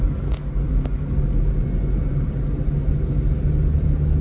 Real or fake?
real